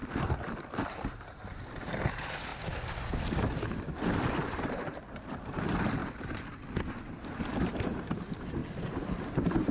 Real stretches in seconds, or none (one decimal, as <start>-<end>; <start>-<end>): 0.0-0.8; 2.5-3.8; 6.0-6.9; 8.6-9.1